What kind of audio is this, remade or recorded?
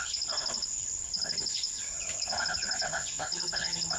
remade